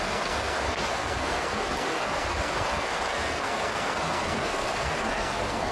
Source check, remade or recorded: remade